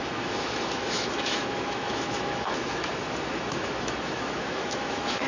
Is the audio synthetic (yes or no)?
yes